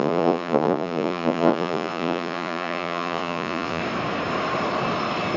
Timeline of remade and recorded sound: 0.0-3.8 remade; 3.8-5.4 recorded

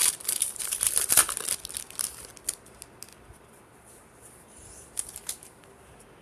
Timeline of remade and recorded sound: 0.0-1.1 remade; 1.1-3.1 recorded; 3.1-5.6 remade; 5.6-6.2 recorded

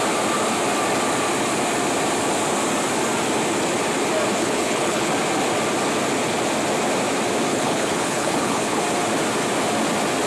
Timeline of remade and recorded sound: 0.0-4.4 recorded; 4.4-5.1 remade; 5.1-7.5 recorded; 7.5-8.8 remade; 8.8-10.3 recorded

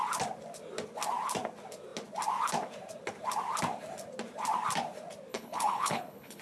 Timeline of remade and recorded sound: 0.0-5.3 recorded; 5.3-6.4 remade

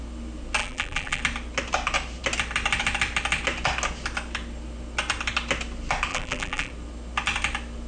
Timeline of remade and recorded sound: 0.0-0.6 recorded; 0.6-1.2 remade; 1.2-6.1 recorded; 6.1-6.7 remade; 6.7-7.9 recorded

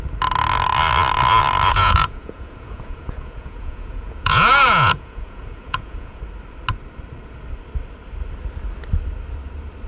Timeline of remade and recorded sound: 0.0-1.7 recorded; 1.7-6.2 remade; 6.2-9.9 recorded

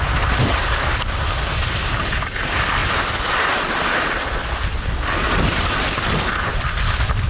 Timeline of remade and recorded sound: 0.0-7.3 recorded

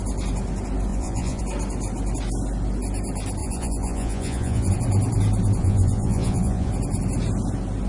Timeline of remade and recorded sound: 0.0-0.9 recorded; 0.9-1.4 remade; 1.4-3.4 recorded; 3.4-4.7 remade; 4.7-5.6 recorded; 5.6-6.7 remade; 6.7-7.9 recorded